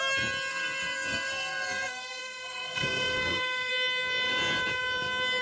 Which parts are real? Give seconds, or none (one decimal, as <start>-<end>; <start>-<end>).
0.0-0.5; 3.7-5.4